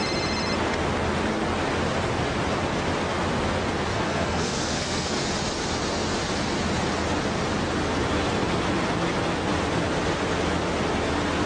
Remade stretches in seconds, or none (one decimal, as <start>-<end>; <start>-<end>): 3.9-5.2